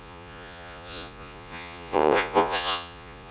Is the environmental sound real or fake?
fake